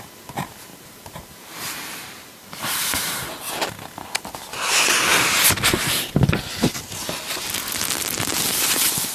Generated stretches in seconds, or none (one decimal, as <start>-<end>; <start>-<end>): 0.7-3.3